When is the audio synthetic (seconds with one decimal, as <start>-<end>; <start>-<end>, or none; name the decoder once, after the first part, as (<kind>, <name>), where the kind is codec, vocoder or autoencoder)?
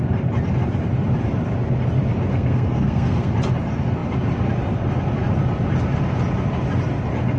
2.3-3.3 (codec, SNAC)